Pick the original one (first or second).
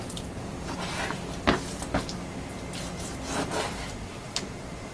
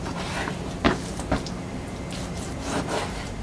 first